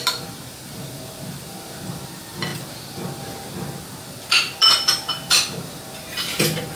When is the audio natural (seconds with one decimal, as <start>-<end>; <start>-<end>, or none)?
0.0-6.8